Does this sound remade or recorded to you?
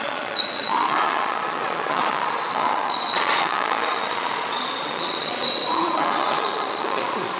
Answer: remade